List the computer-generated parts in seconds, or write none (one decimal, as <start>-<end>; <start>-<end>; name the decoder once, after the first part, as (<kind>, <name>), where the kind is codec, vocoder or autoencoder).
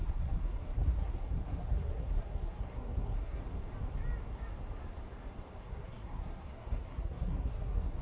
0.0-3.4 (codec, SNAC); 5.6-8.0